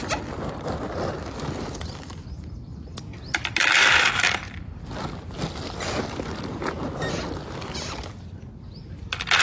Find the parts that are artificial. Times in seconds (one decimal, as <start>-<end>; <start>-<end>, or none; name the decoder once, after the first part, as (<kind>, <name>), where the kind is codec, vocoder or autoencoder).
none